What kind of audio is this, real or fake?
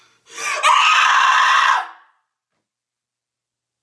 real